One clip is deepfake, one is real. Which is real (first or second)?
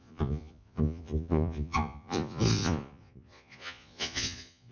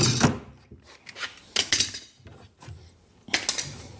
second